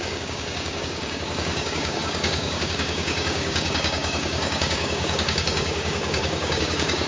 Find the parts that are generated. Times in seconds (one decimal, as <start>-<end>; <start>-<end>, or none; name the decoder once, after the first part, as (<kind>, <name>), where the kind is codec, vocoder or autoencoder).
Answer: 0.0-7.1 (codec, DAC)

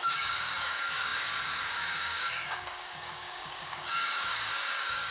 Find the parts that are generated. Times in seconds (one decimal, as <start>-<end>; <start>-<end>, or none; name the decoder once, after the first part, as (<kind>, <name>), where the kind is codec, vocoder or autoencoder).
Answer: 0.0-5.1 (codec, DAC)

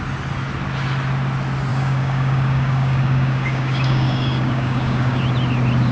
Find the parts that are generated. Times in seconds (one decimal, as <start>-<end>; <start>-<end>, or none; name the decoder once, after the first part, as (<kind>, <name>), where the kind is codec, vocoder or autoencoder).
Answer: 1.7-5.2 (codec, DAC)